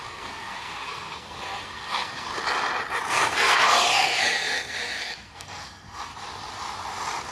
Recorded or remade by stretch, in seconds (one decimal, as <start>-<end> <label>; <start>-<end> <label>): 0.0-2.3 remade; 2.3-3.1 recorded; 3.1-6.1 remade; 6.1-7.3 recorded